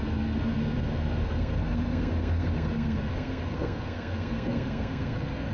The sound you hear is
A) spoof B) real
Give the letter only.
A